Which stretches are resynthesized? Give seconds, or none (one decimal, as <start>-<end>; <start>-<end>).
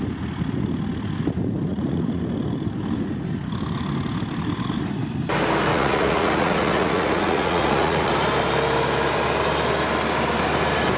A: 1.7-2.2; 5.7-8.1